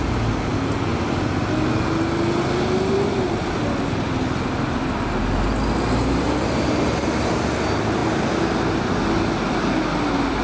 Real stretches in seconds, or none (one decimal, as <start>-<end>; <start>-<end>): 0.0-10.4